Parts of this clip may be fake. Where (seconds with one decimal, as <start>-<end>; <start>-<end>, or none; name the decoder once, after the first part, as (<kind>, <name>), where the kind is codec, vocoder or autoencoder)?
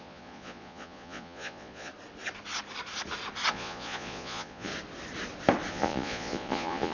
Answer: 0.0-1.9 (vocoder, Vocos); 3.5-4.7; 5.7-6.9